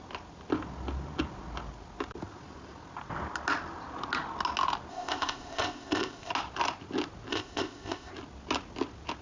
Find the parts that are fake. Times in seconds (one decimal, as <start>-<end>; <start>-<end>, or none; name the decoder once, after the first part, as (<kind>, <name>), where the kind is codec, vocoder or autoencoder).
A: 4.9-6.3 (codec, ZipCodec); 7.3-8.1